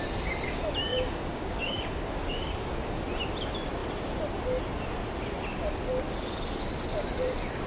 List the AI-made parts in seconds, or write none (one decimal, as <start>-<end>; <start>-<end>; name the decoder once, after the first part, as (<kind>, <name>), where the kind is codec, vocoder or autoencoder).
0.9-3.0 (codec, DAC)